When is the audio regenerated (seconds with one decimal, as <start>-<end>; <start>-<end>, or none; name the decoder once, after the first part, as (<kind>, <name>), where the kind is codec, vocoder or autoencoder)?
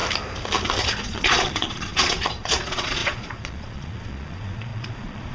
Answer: 0.8-5.3 (vocoder, Vocos)